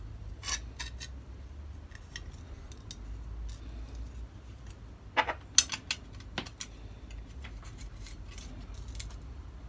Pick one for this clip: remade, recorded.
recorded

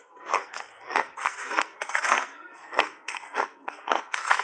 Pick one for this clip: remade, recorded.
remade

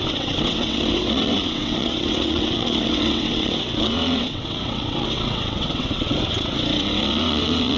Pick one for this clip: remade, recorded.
remade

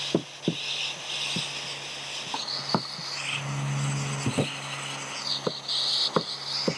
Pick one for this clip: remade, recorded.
recorded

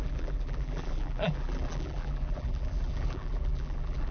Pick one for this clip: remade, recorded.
remade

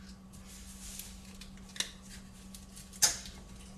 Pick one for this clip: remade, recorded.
recorded